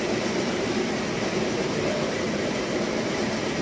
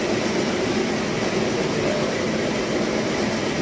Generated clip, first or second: first